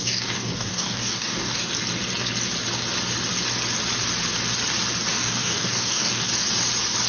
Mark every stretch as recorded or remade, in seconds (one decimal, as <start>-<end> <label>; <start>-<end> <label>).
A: 0.0-1.7 remade; 1.7-5.1 recorded; 5.1-6.3 remade; 6.3-7.1 recorded